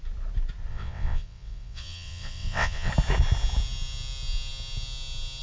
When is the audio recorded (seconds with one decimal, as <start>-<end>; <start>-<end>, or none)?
0.0-0.7; 2.9-5.4